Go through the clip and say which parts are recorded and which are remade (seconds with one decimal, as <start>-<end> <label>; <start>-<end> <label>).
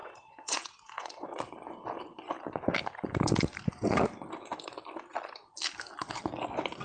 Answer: 0.0-1.4 remade; 1.4-6.8 recorded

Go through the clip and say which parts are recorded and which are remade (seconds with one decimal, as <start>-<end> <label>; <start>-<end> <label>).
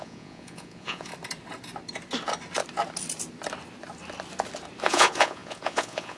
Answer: 0.0-1.1 remade; 1.1-4.8 recorded; 4.8-6.2 remade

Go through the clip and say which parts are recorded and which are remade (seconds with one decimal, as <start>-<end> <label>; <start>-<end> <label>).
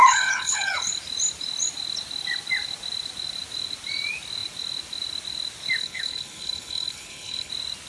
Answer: 0.0-0.9 remade; 0.9-5.8 recorded; 5.8-7.5 remade; 7.5-7.9 recorded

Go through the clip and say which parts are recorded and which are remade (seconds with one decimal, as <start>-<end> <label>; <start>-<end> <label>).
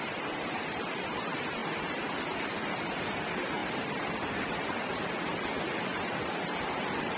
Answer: 0.0-1.6 remade; 1.6-2.8 recorded; 2.8-7.2 remade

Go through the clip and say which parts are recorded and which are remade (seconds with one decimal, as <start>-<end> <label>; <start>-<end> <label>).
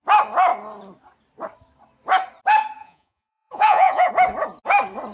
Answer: 0.0-2.8 recorded; 2.8-4.1 remade; 4.1-5.1 recorded